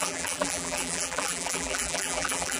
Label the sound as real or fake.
fake